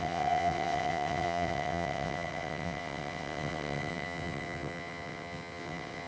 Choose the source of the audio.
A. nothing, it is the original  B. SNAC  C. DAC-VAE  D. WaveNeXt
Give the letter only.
D